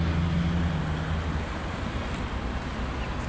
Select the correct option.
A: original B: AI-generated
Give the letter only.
A